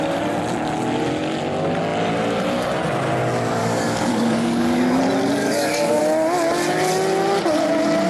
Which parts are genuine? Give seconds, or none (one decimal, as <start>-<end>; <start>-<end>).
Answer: 0.0-3.6; 5.0-5.4; 6.0-8.1